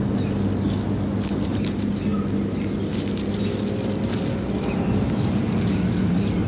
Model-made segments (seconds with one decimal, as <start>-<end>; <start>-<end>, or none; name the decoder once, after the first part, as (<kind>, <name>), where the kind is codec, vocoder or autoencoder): none